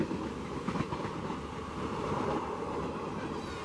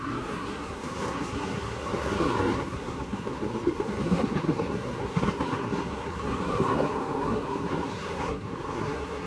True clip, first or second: first